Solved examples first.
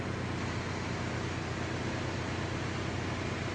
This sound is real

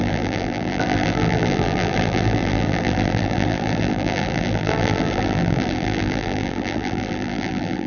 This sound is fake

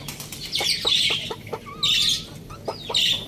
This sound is real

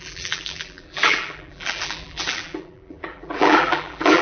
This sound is fake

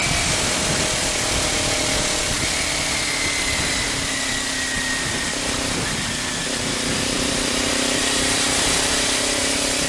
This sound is fake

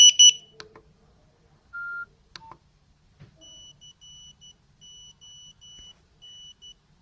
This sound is real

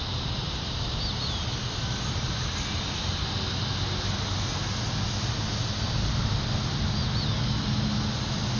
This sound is real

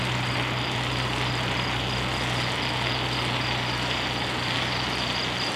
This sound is real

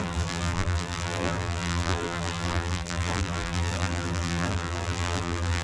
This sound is fake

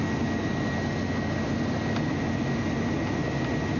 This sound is real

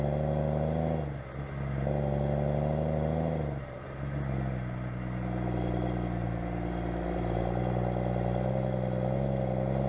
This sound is real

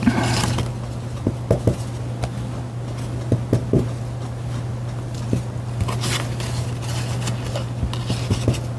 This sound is real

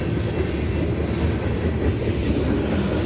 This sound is real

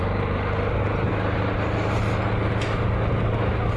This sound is real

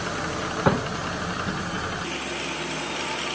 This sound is real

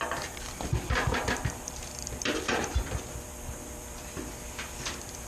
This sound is fake